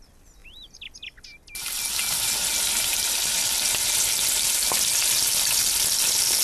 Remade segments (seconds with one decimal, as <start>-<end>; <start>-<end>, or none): none